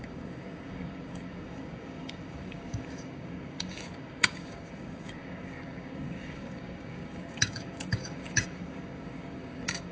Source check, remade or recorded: remade